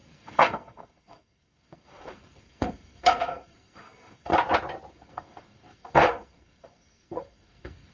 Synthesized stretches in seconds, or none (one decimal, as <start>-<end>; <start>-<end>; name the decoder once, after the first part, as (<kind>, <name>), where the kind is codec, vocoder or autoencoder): 0.0-4.3 (codec, SNAC); 4.9-7.9